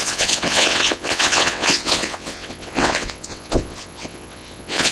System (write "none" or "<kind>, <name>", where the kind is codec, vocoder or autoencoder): vocoder, WaveNeXt